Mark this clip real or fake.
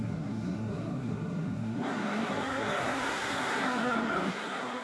fake